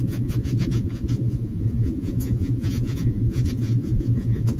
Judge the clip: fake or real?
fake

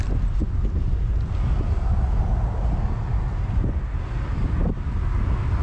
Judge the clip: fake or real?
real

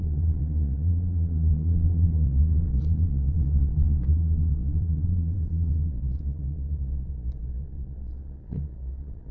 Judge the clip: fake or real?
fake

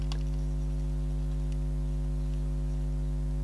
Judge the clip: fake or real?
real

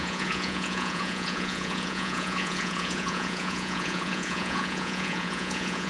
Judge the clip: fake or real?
fake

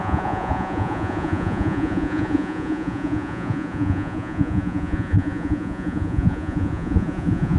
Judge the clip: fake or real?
fake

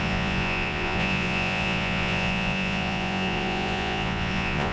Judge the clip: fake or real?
fake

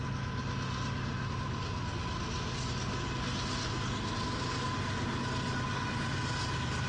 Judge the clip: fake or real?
real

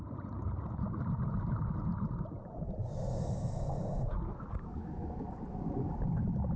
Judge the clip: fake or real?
real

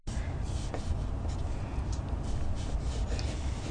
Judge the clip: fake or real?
real